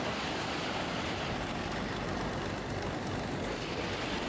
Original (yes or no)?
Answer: yes